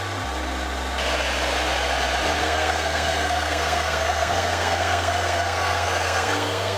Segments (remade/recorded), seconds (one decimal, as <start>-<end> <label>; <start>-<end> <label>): 0.0-2.4 recorded; 2.4-6.8 remade